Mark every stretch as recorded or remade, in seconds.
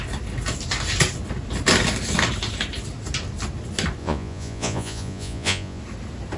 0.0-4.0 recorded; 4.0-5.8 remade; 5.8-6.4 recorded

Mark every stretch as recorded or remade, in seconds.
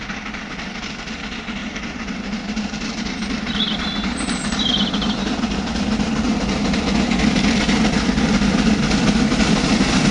0.0-1.6 recorded; 1.6-6.8 remade; 6.8-10.1 recorded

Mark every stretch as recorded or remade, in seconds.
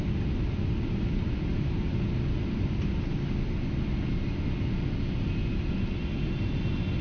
0.0-7.0 recorded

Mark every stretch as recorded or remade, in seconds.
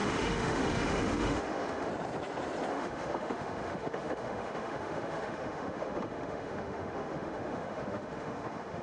0.0-1.9 remade; 1.9-2.7 recorded; 2.7-8.8 remade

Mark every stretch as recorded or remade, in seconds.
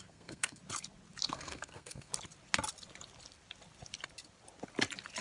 0.0-0.6 remade; 0.6-1.3 recorded; 1.3-2.1 remade; 2.1-5.2 recorded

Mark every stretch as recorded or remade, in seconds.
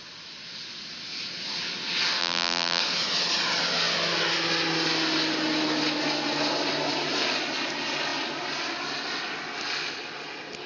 0.0-2.2 recorded; 2.2-2.8 remade; 2.8-10.7 recorded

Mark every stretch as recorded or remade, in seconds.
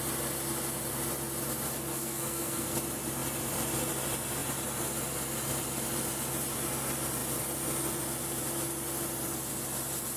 0.0-1.9 recorded; 1.9-2.8 remade; 2.8-10.2 recorded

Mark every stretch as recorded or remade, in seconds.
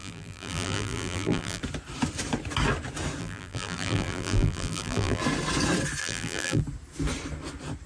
0.0-1.6 remade; 1.6-3.2 recorded; 3.2-5.2 remade; 5.2-6.0 recorded; 6.0-6.6 remade; 6.6-7.9 recorded